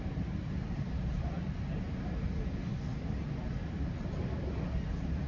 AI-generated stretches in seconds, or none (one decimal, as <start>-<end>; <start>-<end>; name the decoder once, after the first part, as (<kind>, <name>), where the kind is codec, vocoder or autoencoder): 2.9-4.0 (vocoder, BigVGAN v2)